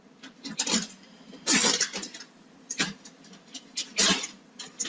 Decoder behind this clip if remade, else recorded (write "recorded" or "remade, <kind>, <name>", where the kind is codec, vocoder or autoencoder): recorded